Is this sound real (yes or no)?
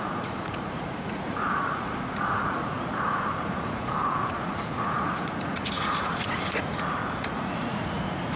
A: no